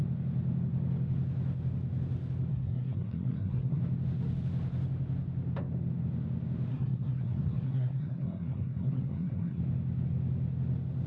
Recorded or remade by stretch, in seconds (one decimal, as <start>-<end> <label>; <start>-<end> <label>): 0.0-2.5 recorded; 2.5-3.8 remade; 3.8-6.7 recorded; 6.7-9.6 remade; 9.6-11.1 recorded